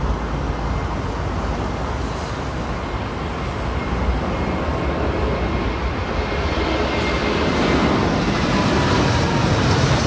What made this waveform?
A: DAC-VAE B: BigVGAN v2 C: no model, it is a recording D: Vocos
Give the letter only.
C